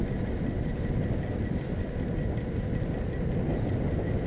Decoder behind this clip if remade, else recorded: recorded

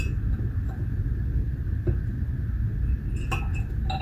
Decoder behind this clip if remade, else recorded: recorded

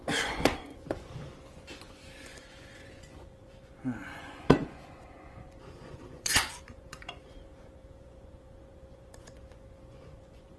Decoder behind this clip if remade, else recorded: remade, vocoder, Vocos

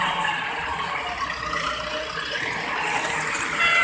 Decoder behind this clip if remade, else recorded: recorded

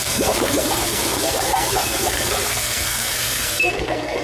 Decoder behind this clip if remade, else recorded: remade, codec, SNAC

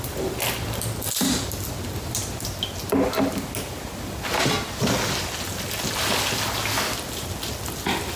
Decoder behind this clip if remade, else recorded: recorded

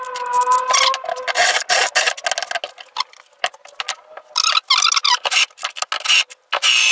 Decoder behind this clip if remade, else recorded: recorded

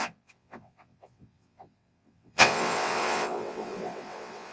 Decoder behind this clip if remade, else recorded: remade, vocoder, WaveNeXt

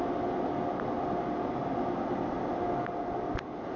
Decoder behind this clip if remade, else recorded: recorded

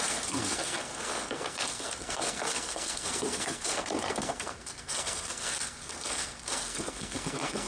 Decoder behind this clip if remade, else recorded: remade, codec, SNAC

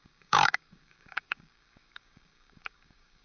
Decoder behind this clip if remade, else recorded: remade, codec, DAC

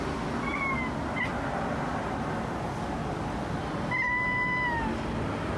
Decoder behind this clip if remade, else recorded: recorded